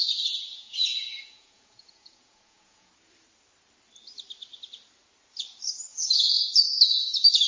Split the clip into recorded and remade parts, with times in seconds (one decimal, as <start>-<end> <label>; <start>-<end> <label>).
0.0-0.5 recorded; 0.5-2.9 remade; 2.9-5.9 recorded; 5.9-6.5 remade; 6.5-7.5 recorded